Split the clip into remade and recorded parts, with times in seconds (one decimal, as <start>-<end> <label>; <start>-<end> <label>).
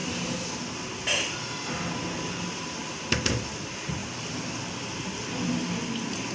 0.0-6.3 recorded